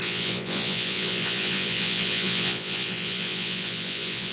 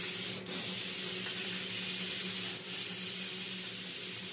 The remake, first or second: first